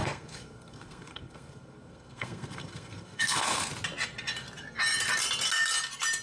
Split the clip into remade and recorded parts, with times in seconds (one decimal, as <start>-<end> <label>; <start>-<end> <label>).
0.0-3.7 remade; 3.7-6.2 recorded